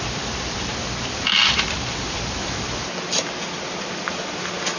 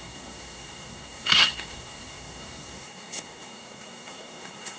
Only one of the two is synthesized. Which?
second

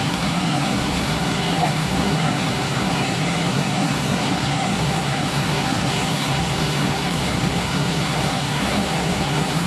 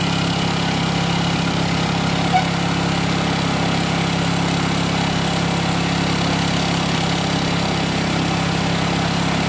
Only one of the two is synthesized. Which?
first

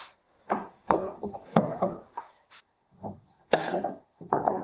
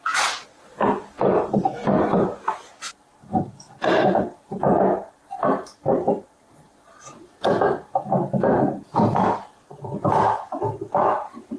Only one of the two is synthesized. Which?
first